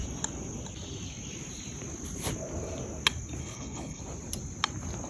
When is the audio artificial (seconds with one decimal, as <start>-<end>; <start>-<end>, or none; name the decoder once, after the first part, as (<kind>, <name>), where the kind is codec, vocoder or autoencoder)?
3.4-4.0 (codec, HILCodec)